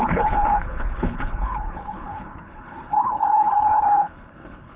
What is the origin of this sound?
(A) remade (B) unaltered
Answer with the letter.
A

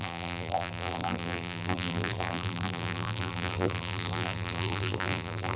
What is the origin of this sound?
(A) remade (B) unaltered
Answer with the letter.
A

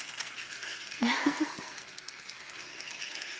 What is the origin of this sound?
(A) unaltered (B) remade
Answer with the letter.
B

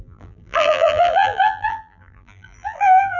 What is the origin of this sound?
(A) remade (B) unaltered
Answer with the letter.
A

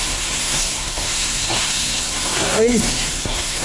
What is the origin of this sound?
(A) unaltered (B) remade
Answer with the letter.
B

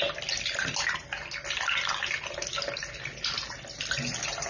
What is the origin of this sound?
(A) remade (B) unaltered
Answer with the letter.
B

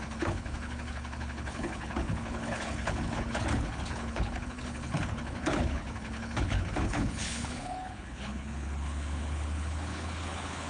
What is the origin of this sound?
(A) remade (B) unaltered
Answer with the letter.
A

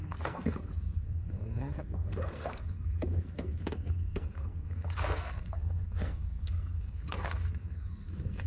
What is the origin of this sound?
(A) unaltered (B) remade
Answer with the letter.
B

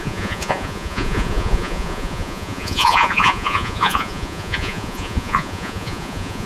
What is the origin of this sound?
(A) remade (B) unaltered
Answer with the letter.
A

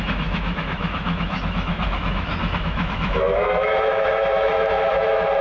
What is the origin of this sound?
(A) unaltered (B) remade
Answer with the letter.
B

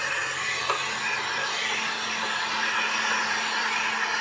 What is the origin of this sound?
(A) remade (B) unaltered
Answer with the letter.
B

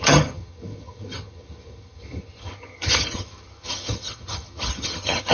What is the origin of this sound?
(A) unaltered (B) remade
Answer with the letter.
B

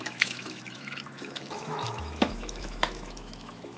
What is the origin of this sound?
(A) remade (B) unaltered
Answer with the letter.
A